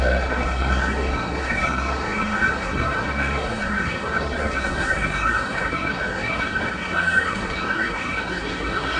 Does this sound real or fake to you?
fake